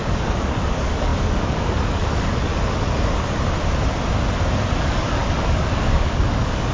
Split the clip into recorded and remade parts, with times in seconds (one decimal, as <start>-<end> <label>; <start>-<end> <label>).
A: 0.0-2.5 remade; 2.5-4.8 recorded; 4.8-6.7 remade

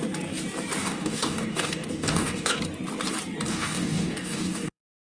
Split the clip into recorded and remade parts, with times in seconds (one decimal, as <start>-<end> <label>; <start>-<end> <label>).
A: 0.0-0.8 recorded; 0.8-2.6 remade; 2.6-3.5 recorded; 3.5-5.0 remade

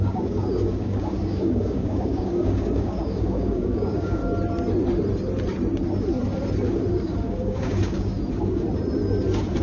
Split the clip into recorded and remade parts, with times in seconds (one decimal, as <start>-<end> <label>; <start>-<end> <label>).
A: 0.0-4.2 remade; 4.2-6.9 recorded; 6.9-8.1 remade; 8.1-9.6 recorded